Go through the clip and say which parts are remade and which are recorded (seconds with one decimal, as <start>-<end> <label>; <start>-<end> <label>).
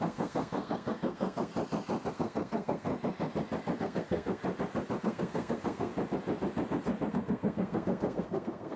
0.0-1.5 remade; 1.5-2.1 recorded; 2.1-2.9 remade; 2.9-3.8 recorded; 3.8-4.4 remade; 4.4-5.0 recorded; 5.0-5.9 remade; 5.9-7.1 recorded; 7.1-8.8 remade